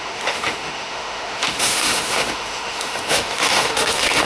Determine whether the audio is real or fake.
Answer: fake